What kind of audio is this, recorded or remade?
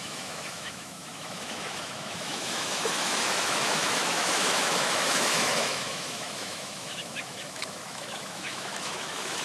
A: remade